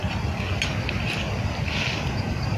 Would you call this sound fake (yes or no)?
no